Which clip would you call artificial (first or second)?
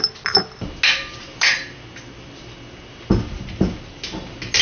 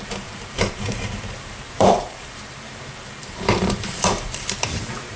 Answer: second